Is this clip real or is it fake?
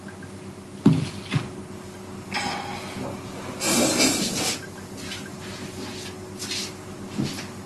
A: real